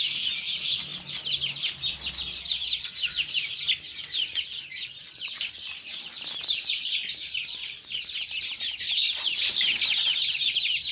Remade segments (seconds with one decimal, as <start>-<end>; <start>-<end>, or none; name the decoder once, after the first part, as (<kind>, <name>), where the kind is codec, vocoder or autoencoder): none